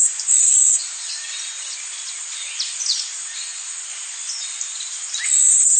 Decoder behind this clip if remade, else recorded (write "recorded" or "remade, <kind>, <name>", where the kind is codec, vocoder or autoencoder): recorded